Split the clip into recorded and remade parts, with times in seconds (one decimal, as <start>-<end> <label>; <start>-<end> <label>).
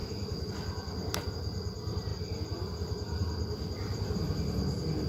0.0-0.5 remade; 0.5-5.1 recorded